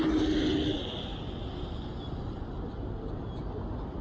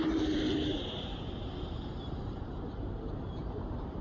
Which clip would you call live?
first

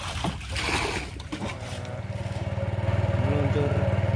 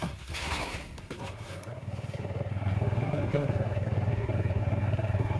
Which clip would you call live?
first